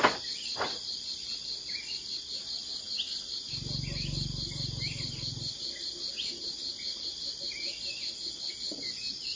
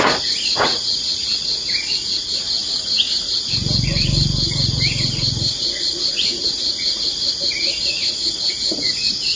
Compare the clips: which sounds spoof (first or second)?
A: second